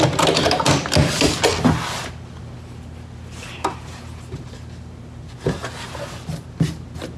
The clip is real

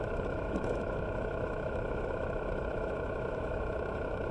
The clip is fake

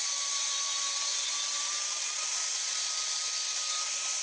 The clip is real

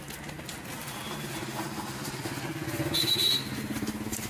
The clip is real